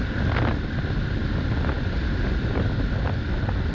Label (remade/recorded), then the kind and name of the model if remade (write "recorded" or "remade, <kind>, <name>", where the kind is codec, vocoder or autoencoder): recorded